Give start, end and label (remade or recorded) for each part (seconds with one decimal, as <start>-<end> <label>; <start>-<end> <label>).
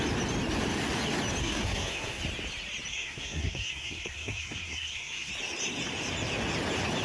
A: 0.0-1.4 recorded; 1.4-2.2 remade; 2.2-2.9 recorded; 2.9-5.3 remade; 5.3-7.0 recorded